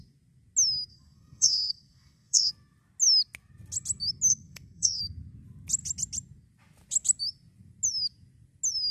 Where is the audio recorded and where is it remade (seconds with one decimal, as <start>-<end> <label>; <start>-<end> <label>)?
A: 0.0-0.9 recorded; 0.9-2.5 remade; 2.5-4.3 recorded; 4.3-5.0 remade; 5.0-8.9 recorded